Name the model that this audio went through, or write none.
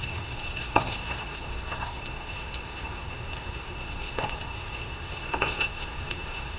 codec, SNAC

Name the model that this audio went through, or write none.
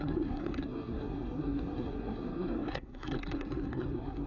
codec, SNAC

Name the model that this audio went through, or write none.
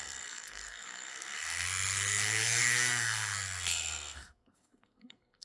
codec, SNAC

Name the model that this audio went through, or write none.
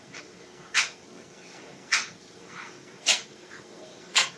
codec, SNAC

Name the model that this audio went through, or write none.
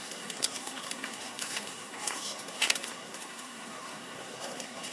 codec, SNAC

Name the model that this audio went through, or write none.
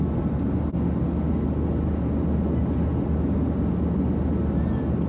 none